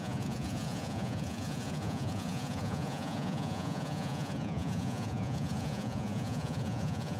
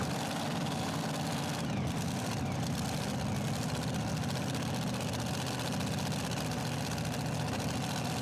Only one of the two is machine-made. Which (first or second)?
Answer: first